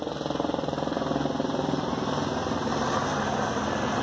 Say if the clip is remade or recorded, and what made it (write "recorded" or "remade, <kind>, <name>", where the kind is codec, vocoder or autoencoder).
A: remade, vocoder, BigVGAN v2